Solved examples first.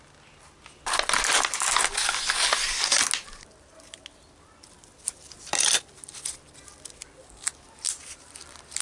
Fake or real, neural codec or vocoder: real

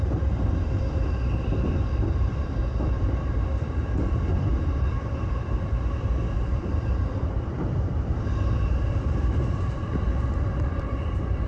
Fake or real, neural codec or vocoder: fake, vocoder, BigVGAN v2